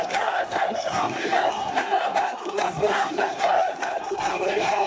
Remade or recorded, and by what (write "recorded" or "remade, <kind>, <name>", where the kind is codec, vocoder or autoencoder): remade, codec, SNAC